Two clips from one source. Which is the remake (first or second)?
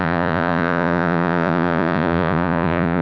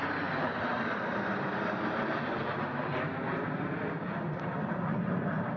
first